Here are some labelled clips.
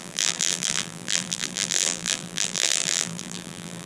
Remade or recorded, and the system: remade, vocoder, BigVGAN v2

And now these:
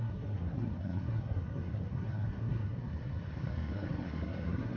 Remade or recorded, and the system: remade, codec, SNAC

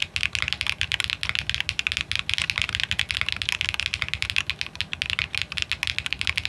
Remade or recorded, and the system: recorded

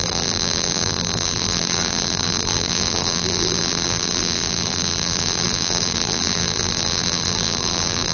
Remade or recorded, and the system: remade, vocoder, BigVGAN v2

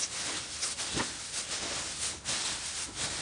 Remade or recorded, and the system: recorded